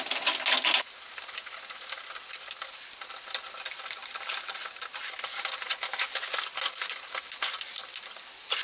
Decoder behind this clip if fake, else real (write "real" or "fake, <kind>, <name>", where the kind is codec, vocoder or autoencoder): real